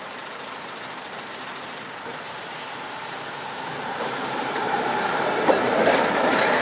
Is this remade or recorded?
remade